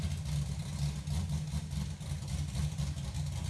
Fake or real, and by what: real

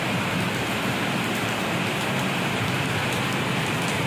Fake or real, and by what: fake, vocoder, BigVGAN v2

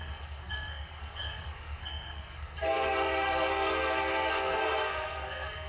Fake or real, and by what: fake, codec, SNAC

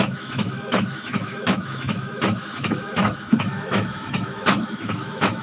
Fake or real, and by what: fake, autoencoder, DAC-VAE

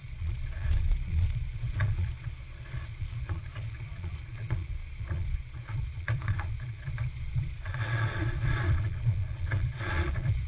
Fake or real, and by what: fake, vocoder, Vocos